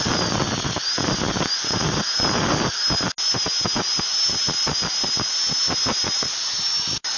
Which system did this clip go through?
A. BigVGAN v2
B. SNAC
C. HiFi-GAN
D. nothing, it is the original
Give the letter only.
D